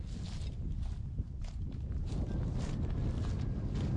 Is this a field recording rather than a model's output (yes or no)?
yes